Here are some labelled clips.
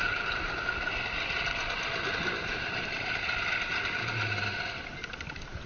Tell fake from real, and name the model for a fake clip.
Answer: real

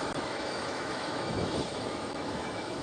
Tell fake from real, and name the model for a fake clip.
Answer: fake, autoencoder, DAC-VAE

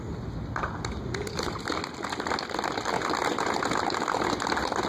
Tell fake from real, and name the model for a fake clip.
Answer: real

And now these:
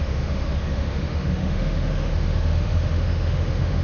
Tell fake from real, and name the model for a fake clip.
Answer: fake, autoencoder, DAC-VAE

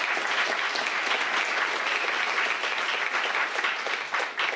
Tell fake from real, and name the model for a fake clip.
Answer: real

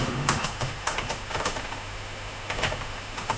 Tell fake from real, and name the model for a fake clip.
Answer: fake, autoencoder, DAC-VAE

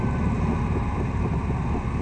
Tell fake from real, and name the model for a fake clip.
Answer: real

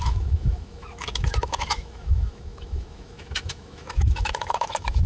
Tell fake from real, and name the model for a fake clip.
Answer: fake, autoencoder, DAC-VAE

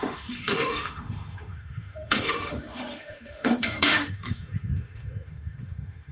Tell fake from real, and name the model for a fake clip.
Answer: fake, autoencoder, DAC-VAE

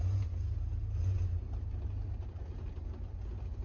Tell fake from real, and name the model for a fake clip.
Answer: real